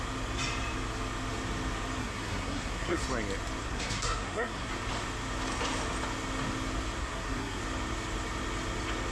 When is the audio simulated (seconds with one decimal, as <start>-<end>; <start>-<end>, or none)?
2.0-3.0; 3.6-4.7; 7.0-7.6